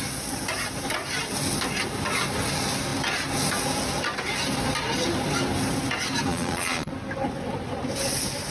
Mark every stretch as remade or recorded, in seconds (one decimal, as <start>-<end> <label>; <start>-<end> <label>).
0.0-6.3 recorded; 6.3-6.9 remade; 6.9-8.5 recorded